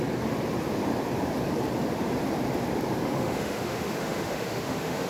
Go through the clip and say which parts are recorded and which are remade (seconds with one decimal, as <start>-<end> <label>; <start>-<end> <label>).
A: 0.0-3.0 recorded; 3.0-5.1 remade